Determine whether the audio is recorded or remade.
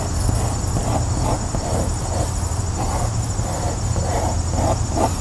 recorded